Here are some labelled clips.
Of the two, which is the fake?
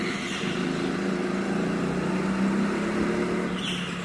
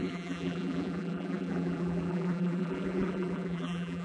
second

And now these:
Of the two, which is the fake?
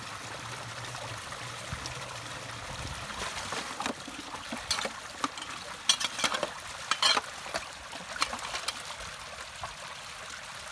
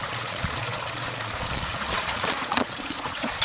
second